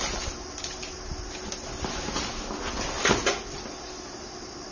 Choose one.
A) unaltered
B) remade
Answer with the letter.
A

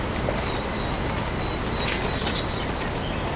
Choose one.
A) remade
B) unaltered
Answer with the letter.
B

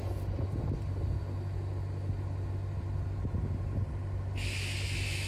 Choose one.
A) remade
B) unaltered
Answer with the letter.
B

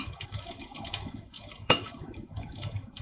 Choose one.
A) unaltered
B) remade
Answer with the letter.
B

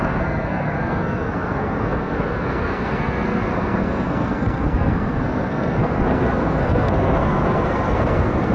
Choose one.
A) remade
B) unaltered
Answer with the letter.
A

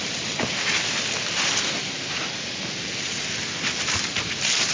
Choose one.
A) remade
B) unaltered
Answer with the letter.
B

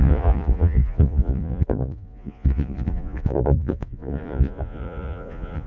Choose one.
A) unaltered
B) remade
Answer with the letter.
B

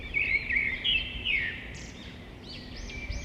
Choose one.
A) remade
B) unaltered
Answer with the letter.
A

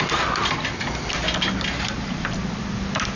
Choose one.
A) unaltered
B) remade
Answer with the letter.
A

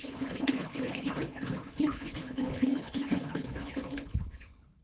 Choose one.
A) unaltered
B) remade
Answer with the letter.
B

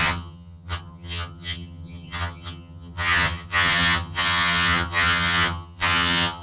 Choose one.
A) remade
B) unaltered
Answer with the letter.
A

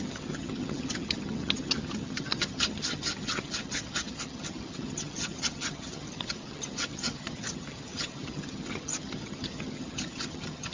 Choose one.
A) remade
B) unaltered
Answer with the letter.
A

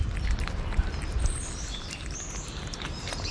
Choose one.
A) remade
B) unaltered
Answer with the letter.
B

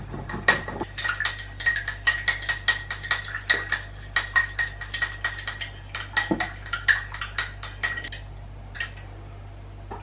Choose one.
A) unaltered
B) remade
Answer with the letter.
A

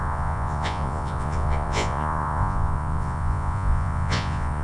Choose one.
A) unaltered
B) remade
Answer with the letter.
B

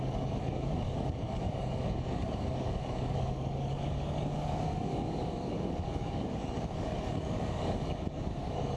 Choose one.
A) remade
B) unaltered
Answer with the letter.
A